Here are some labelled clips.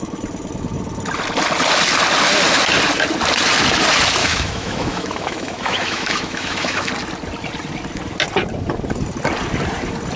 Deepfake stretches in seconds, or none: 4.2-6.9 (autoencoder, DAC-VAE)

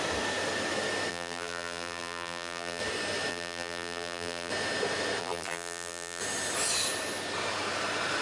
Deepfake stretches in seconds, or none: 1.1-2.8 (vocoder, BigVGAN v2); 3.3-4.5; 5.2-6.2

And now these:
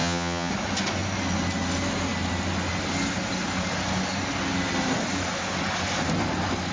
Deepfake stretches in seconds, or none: 0.0-0.5 (vocoder, HiFi-GAN)